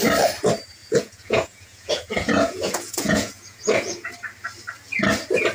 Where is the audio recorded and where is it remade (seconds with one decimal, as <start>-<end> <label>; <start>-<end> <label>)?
0.0-0.8 recorded; 0.8-4.1 remade; 4.1-5.5 recorded